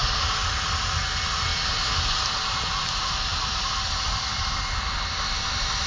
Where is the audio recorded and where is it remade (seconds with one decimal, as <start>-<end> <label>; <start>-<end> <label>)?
0.0-1.5 recorded; 1.5-2.1 remade; 2.1-3.3 recorded; 3.3-5.4 remade; 5.4-5.9 recorded